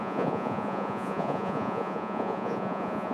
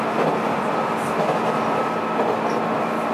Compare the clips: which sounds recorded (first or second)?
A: second